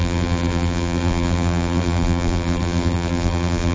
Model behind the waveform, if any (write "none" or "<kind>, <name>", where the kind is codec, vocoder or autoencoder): vocoder, BigVGAN v2